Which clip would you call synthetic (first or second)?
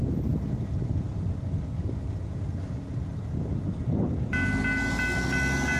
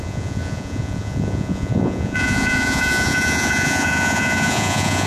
second